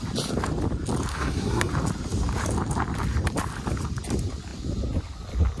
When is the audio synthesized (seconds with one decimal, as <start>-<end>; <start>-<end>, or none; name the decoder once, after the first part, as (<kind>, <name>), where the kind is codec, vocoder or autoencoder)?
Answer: 1.1-1.7 (codec, SNAC)